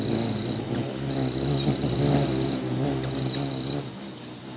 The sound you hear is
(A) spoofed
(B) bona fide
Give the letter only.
B